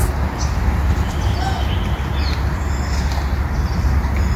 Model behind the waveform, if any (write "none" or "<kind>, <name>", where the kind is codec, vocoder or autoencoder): none